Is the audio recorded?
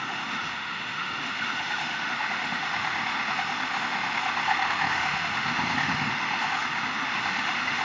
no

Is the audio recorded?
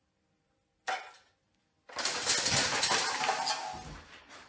yes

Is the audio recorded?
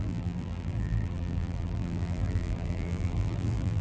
no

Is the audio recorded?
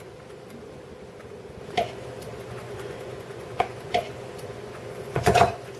no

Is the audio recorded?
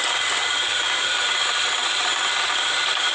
yes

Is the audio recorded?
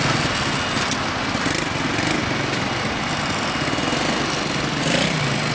yes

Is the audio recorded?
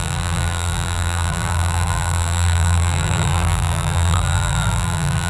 no